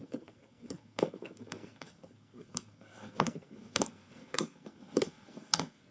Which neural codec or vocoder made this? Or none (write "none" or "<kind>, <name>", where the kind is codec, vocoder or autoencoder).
codec, SNAC